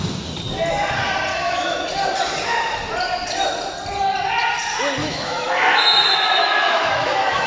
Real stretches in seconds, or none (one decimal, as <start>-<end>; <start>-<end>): 0.0-1.3; 1.8-5.0